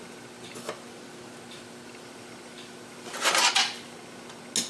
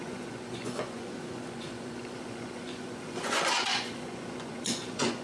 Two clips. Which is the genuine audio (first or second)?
first